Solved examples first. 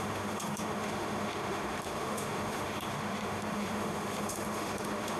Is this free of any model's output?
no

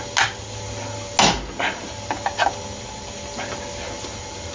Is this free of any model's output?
yes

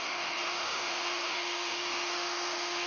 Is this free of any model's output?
no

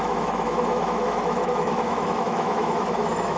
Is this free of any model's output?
no